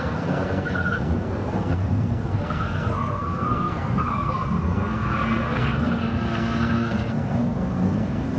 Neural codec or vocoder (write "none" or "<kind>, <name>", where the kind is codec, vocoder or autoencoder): codec, SNAC